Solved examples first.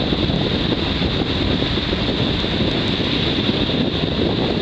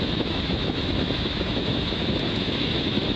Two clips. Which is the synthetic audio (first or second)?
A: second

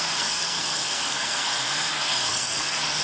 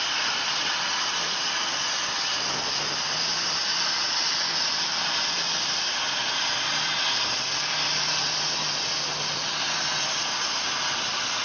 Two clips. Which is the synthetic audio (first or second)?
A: first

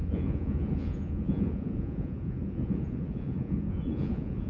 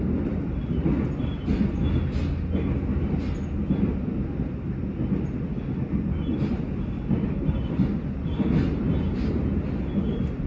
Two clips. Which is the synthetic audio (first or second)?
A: first